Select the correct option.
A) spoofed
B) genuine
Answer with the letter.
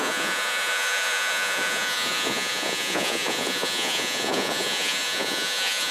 A